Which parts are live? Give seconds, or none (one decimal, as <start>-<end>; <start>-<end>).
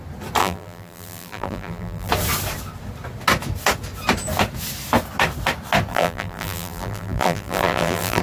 0.0-0.4; 2.1-5.9